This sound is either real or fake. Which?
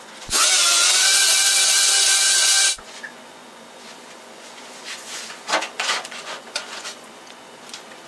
fake